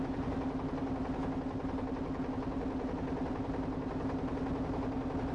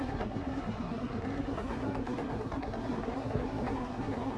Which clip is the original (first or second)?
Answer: first